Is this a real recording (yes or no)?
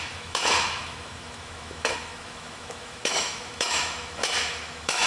no